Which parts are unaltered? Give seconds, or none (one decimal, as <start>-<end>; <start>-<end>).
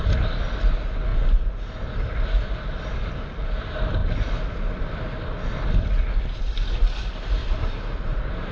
0.0-7.4